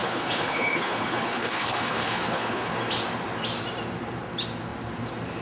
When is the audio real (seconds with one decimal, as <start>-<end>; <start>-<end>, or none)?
2.7-5.4